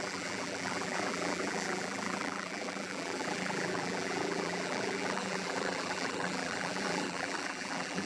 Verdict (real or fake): fake